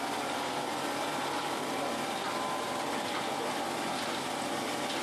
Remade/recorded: remade